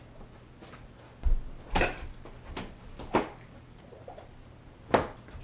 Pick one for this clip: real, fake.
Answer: real